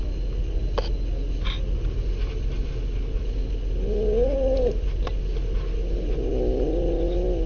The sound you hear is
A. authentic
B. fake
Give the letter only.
A